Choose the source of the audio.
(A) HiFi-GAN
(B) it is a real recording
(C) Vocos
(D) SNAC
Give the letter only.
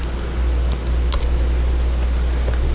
B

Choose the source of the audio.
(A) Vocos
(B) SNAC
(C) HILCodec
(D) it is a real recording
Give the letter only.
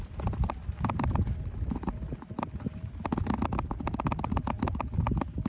D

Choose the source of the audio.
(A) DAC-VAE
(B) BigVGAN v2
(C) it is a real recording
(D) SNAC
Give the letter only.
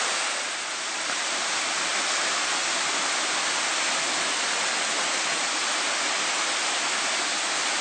C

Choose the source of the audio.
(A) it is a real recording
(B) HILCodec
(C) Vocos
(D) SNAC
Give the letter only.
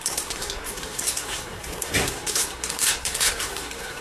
D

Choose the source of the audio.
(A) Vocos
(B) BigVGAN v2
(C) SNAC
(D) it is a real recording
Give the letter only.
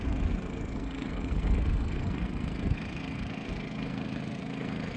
C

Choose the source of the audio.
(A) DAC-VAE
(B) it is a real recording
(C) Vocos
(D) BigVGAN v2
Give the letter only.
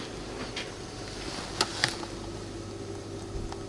B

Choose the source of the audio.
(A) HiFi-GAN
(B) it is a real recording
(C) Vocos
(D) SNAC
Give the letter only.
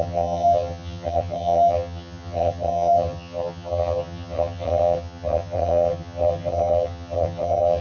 A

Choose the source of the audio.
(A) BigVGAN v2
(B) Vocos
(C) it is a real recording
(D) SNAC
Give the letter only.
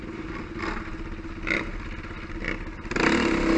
C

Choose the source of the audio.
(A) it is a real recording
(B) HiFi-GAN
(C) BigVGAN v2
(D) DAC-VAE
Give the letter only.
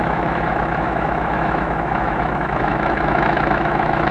D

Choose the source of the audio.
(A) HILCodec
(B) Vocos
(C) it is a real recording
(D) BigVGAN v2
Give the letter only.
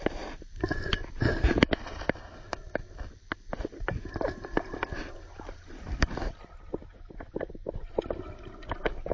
C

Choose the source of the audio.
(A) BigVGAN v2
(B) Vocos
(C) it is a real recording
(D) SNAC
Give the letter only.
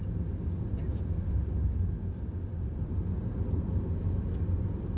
C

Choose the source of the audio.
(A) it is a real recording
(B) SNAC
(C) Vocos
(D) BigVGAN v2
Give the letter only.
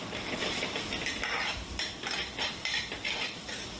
A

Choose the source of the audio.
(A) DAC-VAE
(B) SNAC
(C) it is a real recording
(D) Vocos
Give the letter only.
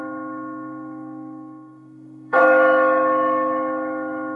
A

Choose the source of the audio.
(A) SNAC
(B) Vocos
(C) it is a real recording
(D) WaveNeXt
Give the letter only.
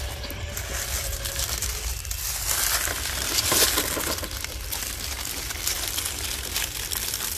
C